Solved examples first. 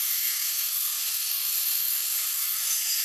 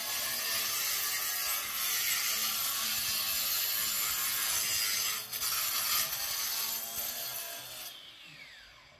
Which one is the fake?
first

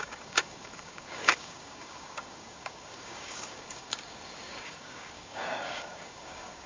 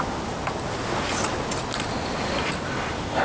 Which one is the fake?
first